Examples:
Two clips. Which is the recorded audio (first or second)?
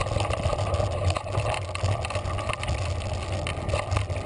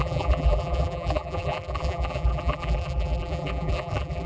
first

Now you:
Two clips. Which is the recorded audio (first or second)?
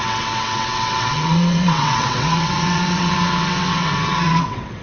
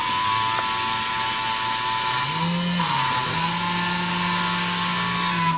second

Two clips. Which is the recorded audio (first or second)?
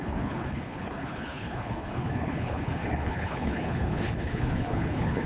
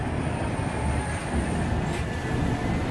second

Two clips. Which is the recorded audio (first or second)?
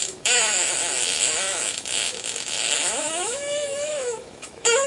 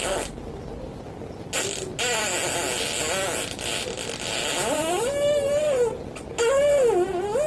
second